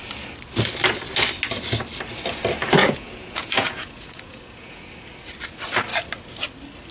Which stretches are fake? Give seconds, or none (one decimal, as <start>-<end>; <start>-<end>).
2.8-4.8